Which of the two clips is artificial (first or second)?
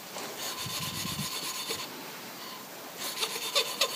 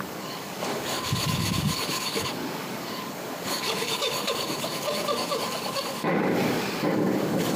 second